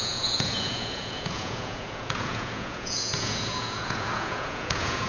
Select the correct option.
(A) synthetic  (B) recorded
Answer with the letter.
A